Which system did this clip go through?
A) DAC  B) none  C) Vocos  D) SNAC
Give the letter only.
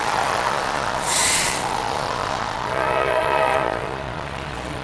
C